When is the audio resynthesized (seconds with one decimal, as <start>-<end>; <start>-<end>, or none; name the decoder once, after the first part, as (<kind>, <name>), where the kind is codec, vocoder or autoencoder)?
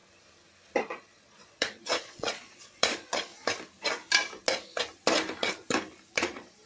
0.8-3.3 (vocoder, Vocos); 6.1-6.7